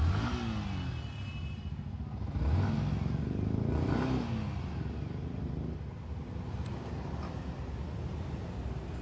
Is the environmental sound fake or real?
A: real